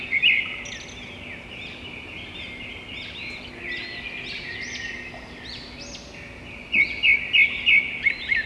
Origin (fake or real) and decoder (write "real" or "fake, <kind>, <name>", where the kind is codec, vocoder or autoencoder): real